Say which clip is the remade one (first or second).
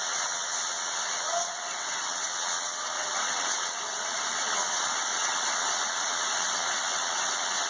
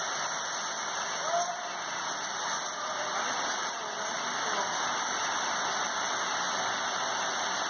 first